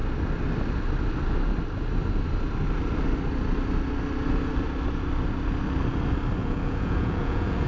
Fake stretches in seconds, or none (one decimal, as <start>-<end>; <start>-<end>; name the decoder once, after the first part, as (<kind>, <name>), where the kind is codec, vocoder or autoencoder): 6.4-7.7 (vocoder, Vocos)